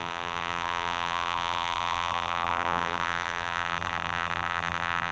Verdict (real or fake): fake